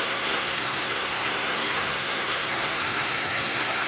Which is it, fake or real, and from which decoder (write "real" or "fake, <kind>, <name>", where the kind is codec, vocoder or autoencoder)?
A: fake, codec, SNAC